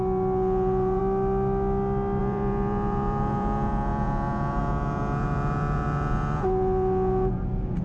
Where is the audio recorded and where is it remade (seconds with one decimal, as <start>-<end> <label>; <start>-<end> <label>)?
0.0-1.0 remade; 1.0-2.2 recorded; 2.2-7.8 remade